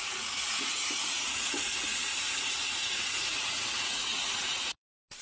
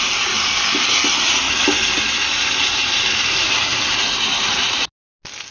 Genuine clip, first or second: second